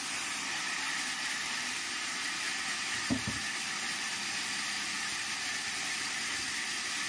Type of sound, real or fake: real